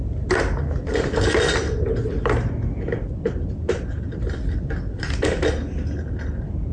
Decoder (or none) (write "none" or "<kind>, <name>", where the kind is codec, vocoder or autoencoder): none